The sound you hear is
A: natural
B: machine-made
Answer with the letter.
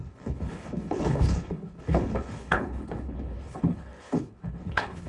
B